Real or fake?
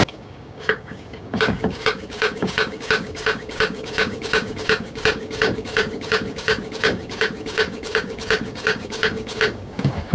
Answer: fake